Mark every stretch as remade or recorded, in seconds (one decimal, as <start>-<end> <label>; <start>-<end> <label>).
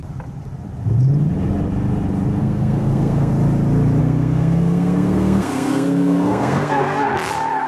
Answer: 0.0-2.4 recorded; 2.4-3.3 remade; 3.3-4.0 recorded; 4.0-7.1 remade; 7.1-7.7 recorded